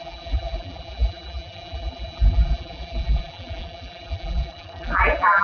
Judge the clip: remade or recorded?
remade